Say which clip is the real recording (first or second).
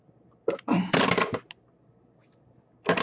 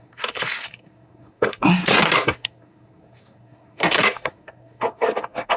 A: first